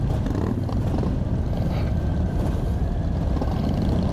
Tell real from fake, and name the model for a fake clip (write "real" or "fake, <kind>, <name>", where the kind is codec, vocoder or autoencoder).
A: real